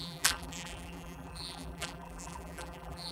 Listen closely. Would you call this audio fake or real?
fake